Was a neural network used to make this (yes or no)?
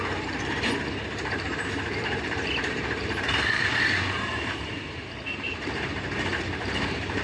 yes